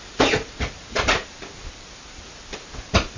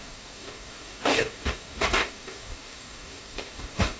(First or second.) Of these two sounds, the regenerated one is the second